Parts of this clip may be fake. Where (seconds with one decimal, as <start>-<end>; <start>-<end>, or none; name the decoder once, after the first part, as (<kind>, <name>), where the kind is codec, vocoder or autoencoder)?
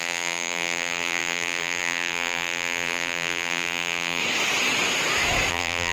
0.0-4.2 (vocoder, BigVGAN v2); 5.5-5.9